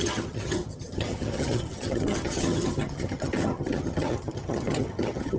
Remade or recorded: remade